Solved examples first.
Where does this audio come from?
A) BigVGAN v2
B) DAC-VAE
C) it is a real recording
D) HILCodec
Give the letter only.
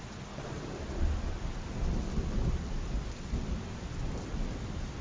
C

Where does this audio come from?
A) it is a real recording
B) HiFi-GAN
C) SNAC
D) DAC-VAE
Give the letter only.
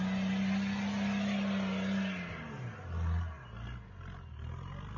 A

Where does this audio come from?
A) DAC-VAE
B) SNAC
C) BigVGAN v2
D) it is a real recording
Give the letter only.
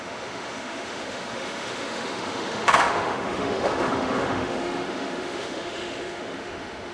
A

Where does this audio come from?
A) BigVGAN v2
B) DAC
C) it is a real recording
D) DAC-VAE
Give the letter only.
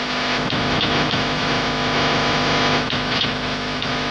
D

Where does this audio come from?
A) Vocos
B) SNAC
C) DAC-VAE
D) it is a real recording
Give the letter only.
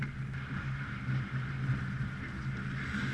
D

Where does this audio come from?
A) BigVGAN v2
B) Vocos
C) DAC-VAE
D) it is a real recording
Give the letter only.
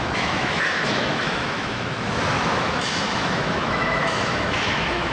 C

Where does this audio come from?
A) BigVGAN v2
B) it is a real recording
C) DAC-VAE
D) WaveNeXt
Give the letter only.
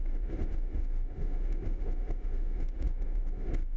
C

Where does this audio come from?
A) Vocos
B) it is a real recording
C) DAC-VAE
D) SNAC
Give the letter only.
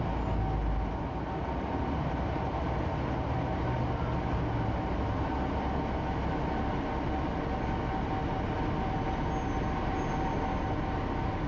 B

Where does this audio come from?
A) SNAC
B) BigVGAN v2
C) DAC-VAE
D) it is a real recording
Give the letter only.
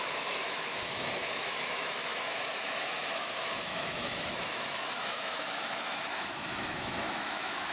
C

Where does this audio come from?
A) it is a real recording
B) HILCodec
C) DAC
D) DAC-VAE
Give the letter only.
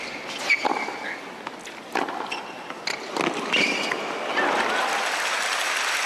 A